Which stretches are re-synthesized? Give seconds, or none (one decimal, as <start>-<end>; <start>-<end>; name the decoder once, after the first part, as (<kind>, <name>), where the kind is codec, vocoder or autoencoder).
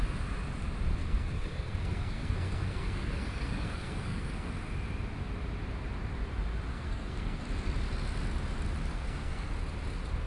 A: 1.0-4.5 (codec, SNAC); 6.7-7.4; 8.9-9.5